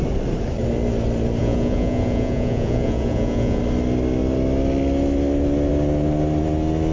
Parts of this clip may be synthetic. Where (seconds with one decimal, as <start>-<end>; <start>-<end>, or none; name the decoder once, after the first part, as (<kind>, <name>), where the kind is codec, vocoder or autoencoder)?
1.4-3.6 (vocoder, Vocos)